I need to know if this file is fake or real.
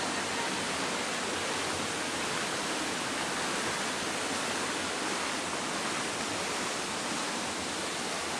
real